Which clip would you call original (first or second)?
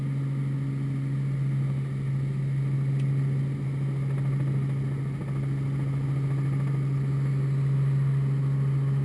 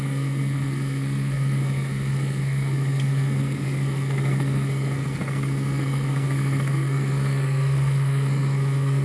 first